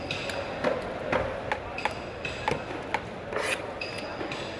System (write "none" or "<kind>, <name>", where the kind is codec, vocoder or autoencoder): none